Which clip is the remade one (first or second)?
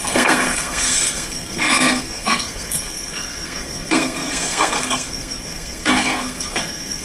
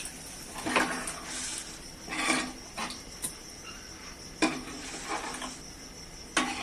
first